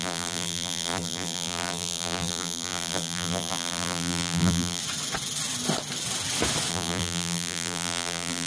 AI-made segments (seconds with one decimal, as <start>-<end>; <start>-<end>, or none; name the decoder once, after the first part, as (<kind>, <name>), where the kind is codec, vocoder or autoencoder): 0.0-4.8 (vocoder, BigVGAN v2); 6.7-8.5